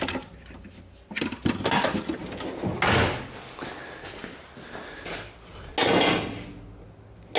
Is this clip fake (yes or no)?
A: no